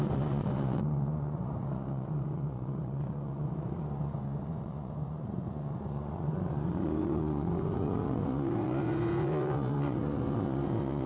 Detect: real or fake fake